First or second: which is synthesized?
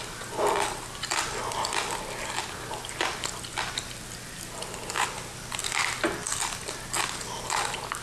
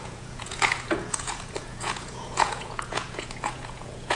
second